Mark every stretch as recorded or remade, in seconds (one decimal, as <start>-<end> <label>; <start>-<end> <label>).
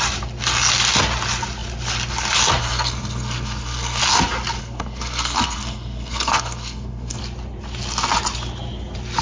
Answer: 0.0-2.6 recorded; 2.6-4.0 remade; 4.0-4.6 recorded; 4.6-7.2 remade; 7.2-9.2 recorded